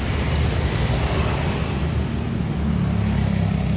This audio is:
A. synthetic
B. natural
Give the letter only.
B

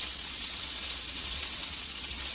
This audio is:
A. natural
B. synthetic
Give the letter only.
B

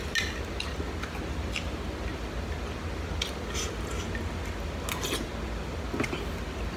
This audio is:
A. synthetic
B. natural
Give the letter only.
B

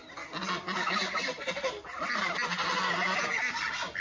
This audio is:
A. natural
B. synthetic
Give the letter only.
A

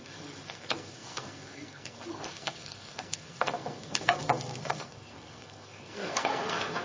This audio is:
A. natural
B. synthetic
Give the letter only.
B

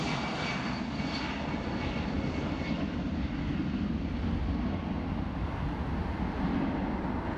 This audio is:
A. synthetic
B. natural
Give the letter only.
B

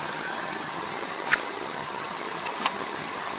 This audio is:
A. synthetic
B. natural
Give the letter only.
A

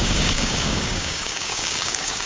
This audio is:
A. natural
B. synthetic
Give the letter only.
B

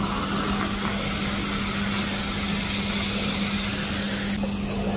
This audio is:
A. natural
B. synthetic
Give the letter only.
A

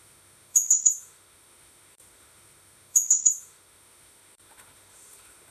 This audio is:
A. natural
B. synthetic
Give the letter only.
B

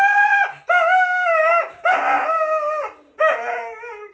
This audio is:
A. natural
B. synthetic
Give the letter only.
A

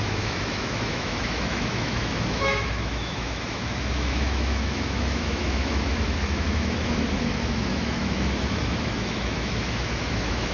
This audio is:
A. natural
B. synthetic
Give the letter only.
B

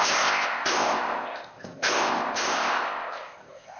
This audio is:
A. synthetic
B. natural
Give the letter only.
A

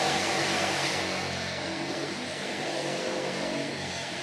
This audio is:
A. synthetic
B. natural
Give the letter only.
A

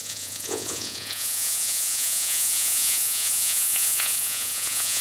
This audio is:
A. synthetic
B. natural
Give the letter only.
A